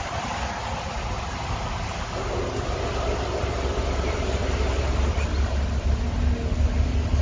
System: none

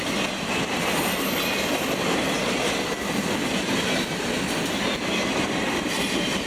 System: none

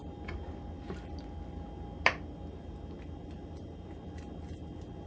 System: none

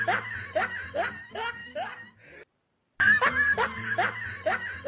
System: none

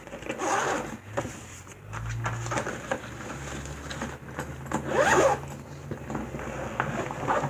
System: none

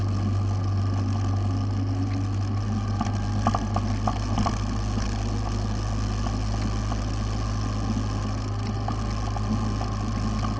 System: none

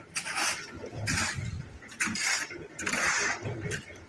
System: vocoder, BigVGAN v2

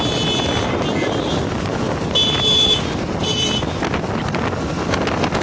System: none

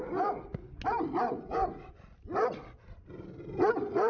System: none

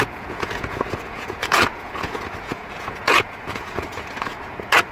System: vocoder, Vocos